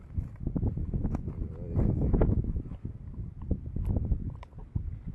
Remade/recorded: recorded